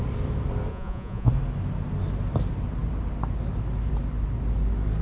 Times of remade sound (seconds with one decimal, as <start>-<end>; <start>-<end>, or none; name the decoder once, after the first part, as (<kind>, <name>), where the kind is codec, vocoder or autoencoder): 0.7-1.3 (vocoder, Vocos)